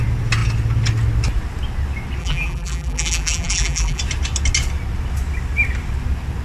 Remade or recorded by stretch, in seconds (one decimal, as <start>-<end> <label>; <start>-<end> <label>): 0.0-2.2 recorded; 2.2-4.0 remade; 4.0-6.4 recorded